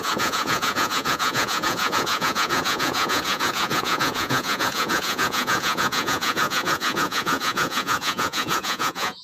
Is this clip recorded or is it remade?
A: remade